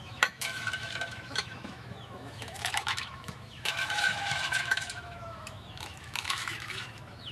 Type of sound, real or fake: fake